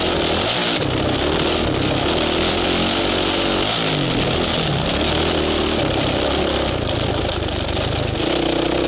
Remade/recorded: recorded